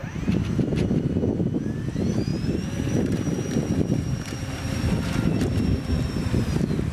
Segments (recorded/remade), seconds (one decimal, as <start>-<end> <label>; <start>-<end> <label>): 0.0-0.7 remade; 0.7-1.9 recorded; 1.9-6.9 remade